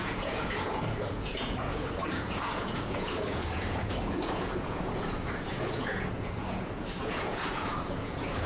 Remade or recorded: remade